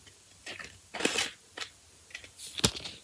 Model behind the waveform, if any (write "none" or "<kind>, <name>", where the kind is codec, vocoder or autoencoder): none